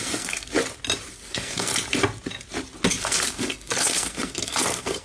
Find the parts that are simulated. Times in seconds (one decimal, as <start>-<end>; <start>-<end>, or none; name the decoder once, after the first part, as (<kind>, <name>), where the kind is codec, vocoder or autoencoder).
0.0-0.5 (codec, SNAC); 1.1-1.7; 2.9-5.0